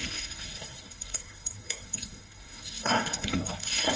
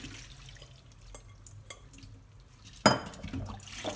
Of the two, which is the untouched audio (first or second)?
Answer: second